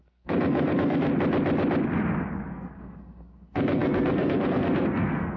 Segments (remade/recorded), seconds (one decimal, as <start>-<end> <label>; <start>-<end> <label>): 0.0-1.1 remade; 1.1-2.5 recorded; 2.5-5.4 remade